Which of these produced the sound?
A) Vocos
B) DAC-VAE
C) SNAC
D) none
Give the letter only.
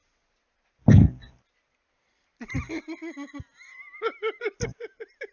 D